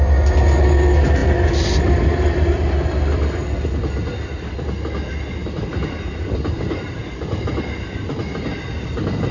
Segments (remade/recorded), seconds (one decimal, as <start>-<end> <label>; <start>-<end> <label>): 0.0-1.2 recorded; 1.2-3.9 remade; 3.9-5.4 recorded; 5.4-7.0 remade; 7.0-9.3 recorded